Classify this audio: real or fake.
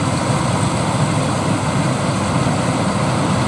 real